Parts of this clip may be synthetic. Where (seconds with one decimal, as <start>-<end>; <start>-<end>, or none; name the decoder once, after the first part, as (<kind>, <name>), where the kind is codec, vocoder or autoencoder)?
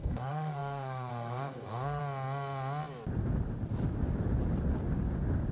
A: 0.0-2.0 (codec, SNAC)